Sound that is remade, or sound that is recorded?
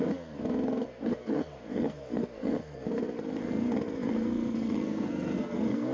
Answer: remade